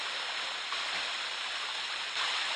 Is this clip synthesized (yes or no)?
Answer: no